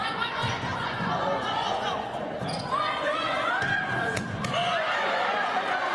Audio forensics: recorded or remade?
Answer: remade